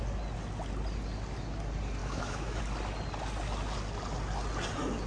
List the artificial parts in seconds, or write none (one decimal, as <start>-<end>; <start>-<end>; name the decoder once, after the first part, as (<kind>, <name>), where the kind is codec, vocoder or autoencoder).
2.0-2.6 (autoencoder, DAC-VAE)